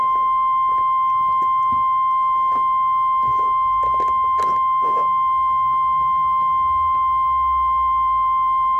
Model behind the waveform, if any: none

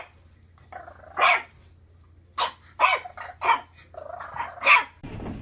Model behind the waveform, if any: none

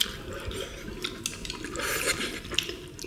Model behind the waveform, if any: none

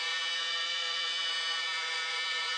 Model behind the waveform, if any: vocoder, Vocos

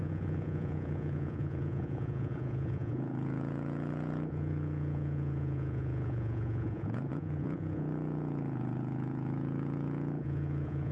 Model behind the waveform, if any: vocoder, Vocos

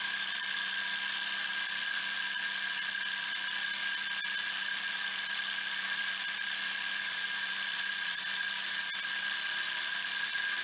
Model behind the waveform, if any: none